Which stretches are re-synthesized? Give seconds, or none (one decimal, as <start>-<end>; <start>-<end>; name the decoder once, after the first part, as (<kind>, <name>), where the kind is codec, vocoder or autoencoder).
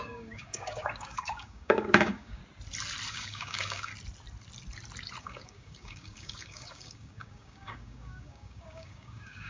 0.0-2.4 (codec, DAC); 3.1-3.9; 5.2-9.5